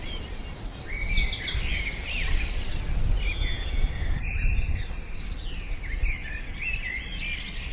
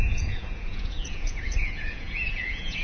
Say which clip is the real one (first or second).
first